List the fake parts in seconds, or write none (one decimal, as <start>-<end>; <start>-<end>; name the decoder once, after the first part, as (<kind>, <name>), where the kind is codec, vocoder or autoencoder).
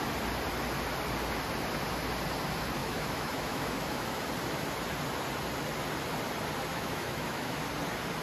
2.8-4.2 (autoencoder, DAC-VAE); 6.7-7.6